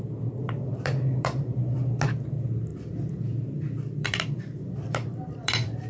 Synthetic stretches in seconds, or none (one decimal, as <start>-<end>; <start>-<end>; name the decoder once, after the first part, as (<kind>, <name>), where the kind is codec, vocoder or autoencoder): 0.4-1.8 (vocoder, BigVGAN v2); 2.7-5.9